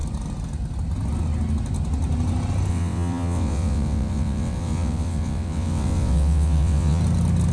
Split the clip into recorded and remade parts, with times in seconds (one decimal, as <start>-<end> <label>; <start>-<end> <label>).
0.0-2.7 recorded; 2.7-7.0 remade; 7.0-7.5 recorded